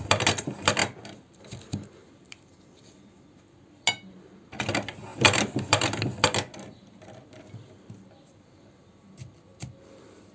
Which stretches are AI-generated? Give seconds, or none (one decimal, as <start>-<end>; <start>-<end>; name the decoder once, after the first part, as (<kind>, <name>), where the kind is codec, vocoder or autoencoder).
none